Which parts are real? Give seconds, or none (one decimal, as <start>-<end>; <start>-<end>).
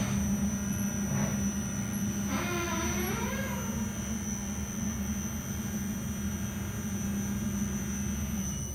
0.0-8.7